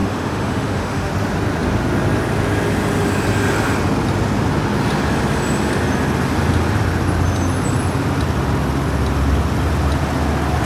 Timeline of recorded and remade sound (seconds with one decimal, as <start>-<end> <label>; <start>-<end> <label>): 0.0-1.1 remade; 1.1-10.6 recorded